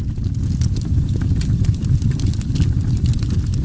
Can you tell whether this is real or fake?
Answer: real